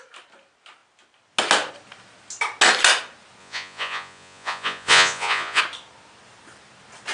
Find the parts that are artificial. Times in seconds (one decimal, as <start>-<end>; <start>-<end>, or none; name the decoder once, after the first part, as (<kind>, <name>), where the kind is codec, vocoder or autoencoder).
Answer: 3.4-5.6 (vocoder, Vocos)